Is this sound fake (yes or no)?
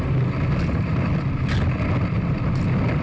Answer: no